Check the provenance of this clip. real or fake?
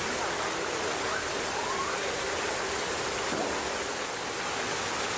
real